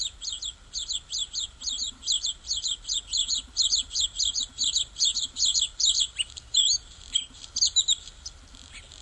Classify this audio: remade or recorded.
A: remade